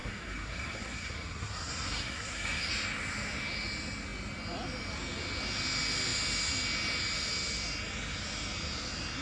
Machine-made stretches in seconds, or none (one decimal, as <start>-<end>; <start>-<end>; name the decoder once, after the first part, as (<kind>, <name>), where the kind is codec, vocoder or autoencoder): 0.0-2.7 (codec, SNAC)